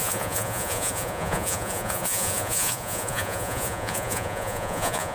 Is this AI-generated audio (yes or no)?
yes